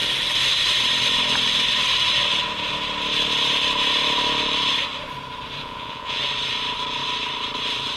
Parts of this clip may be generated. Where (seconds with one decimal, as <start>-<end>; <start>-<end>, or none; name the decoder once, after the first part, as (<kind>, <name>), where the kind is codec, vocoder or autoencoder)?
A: 5.6-6.2 (vocoder, Vocos)